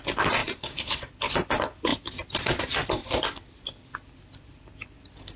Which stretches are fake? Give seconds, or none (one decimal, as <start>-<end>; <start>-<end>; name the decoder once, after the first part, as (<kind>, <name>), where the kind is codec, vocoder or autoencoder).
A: 0.4-1.0 (vocoder, BigVGAN v2); 1.9-2.6